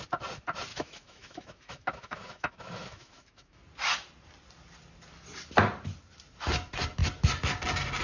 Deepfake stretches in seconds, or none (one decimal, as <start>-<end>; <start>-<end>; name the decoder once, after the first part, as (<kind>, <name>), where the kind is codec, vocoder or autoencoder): 0.7-3.6 (autoencoder, DAC-VAE)